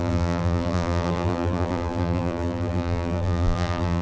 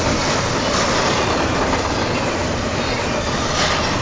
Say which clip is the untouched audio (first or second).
second